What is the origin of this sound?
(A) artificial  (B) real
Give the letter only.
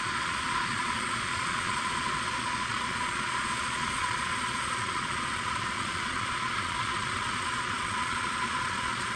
A